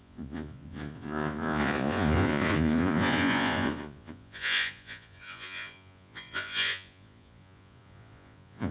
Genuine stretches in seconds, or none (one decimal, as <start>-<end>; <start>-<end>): none